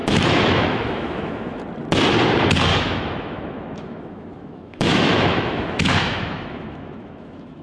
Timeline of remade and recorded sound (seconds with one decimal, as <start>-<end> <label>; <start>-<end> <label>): 0.0-1.6 remade; 1.6-2.7 recorded; 2.7-7.6 remade